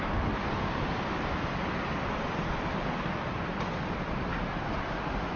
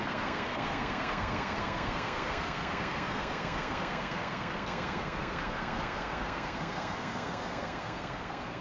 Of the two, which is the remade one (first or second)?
second